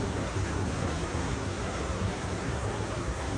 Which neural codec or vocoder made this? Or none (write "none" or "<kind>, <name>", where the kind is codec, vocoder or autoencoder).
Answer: codec, SNAC